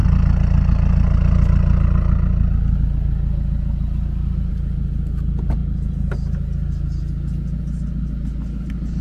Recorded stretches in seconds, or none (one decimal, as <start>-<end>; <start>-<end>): 0.0-9.0